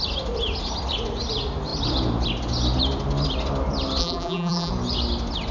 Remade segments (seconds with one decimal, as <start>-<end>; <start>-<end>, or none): 4.0-4.7